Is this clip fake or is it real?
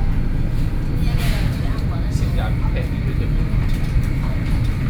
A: real